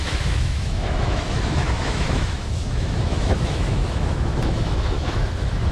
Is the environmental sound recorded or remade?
remade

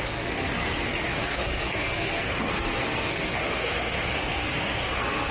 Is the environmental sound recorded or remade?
remade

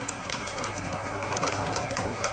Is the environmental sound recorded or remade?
remade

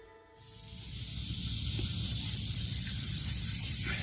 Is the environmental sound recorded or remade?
recorded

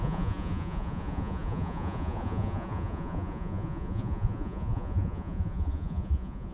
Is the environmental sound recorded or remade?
remade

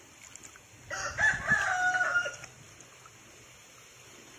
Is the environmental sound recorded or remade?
recorded